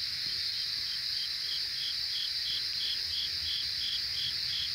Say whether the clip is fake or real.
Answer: real